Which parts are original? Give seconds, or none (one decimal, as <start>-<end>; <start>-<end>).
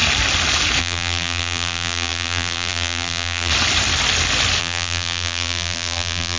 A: 0.0-0.8; 3.5-4.6